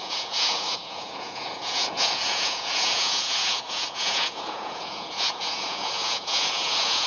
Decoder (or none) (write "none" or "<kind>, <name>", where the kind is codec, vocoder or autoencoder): vocoder, Vocos